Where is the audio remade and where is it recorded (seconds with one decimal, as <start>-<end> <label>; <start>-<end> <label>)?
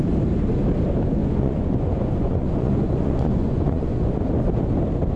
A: 0.0-1.2 recorded; 1.2-4.0 remade; 4.0-5.2 recorded